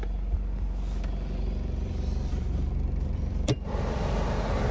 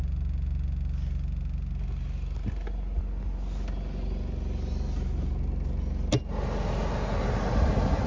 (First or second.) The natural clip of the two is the second